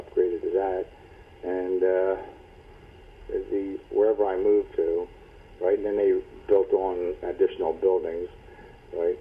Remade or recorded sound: recorded